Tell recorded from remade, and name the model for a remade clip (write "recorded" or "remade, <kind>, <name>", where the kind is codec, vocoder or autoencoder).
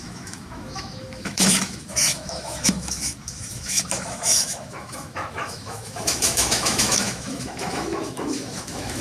remade, autoencoder, DAC-VAE